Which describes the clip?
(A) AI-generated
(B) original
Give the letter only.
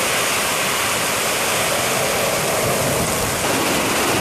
B